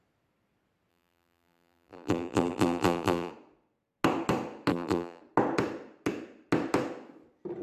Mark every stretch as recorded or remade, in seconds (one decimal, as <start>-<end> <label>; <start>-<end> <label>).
0.0-0.9 recorded; 0.9-3.3 remade; 3.3-4.7 recorded; 4.7-5.2 remade; 5.2-7.6 recorded